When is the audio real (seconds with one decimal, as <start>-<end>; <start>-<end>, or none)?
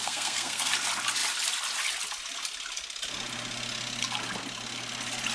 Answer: 0.7-5.3